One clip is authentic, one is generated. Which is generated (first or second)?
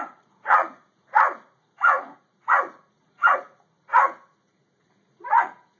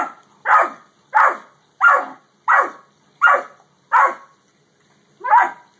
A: first